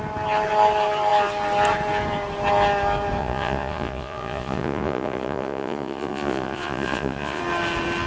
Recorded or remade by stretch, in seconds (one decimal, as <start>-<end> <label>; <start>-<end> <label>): 0.0-3.2 recorded; 3.2-7.4 remade; 7.4-8.1 recorded